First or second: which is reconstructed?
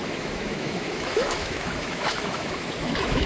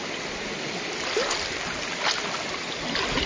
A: first